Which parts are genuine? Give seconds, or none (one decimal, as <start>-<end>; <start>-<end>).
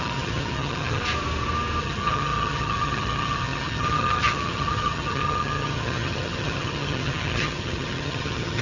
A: 1.0-1.8